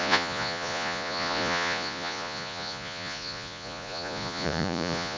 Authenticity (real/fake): fake